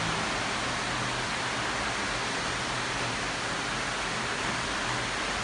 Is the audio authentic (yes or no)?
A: yes